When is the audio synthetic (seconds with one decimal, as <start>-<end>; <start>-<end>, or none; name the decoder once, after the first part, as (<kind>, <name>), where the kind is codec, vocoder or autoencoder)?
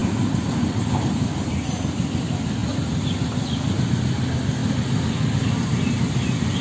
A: none